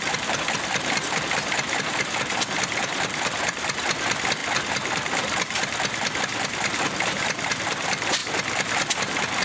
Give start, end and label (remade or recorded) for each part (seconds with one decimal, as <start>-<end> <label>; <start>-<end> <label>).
0.0-4.4 remade; 4.4-6.2 recorded; 6.2-8.2 remade; 8.2-9.4 recorded